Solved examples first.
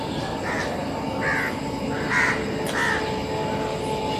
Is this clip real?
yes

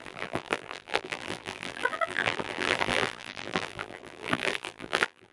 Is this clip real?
no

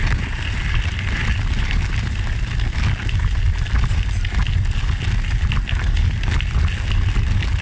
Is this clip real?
yes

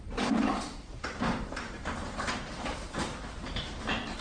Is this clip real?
no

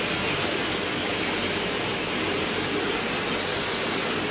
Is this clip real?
yes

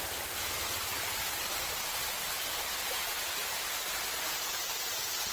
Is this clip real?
no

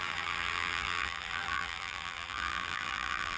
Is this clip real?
no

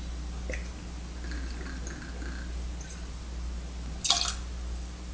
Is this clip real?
yes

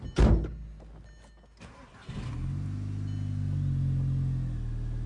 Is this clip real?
yes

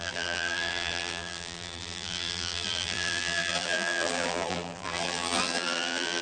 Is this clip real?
no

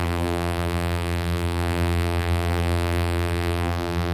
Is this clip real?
no